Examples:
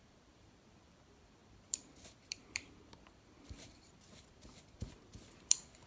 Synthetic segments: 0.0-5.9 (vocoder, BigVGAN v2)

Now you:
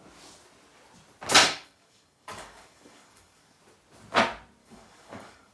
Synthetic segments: 1.4-3.6 (codec, DAC); 4.6-5.5